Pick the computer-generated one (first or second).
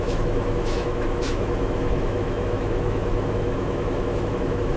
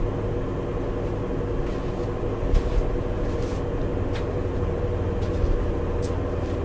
first